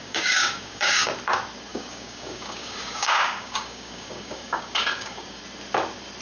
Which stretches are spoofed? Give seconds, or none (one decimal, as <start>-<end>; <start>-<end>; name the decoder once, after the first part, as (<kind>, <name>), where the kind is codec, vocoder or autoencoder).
0.0-1.1 (codec, DAC); 1.7-5.4